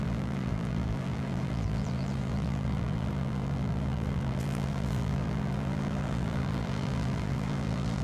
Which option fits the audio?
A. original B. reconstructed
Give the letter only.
B